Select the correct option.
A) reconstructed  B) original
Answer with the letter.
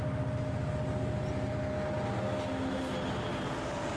B